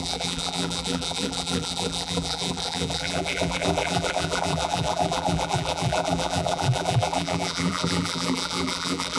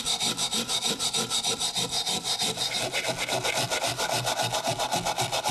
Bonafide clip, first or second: second